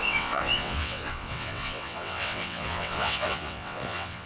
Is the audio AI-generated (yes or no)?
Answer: yes